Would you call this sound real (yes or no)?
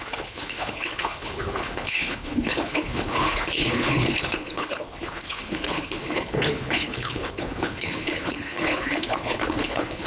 no